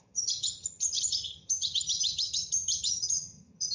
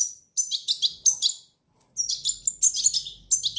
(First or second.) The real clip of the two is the second